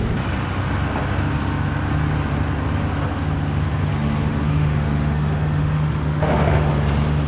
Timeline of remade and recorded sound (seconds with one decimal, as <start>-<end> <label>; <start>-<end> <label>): 0.0-3.9 recorded; 3.9-6.7 remade; 6.7-7.3 recorded

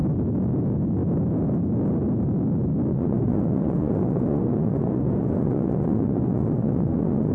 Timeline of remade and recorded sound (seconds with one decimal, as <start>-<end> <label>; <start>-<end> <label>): 0.0-2.9 recorded; 2.9-7.3 remade

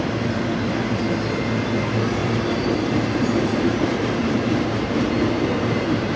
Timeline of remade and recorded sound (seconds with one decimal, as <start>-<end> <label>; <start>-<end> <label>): 0.0-2.2 recorded; 2.2-6.2 remade

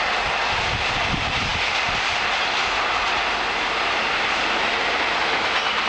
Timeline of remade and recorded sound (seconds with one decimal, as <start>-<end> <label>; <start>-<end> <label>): 0.0-5.9 recorded

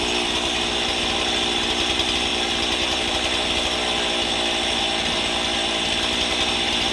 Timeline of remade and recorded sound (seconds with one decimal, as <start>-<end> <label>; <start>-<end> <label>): 0.0-6.9 recorded

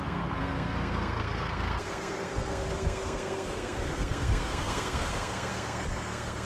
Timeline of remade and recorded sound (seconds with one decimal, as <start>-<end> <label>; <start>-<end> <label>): 0.0-6.5 remade

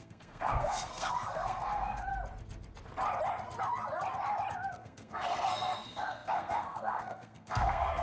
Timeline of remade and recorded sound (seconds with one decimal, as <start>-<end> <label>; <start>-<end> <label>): 0.0-2.1 remade; 2.1-4.7 recorded; 4.7-8.0 remade